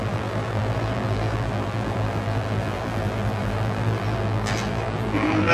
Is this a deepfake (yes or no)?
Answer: yes